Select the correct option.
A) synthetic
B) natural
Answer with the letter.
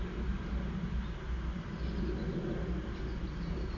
B